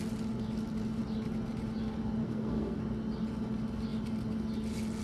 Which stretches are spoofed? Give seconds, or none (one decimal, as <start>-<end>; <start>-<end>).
2.2-2.8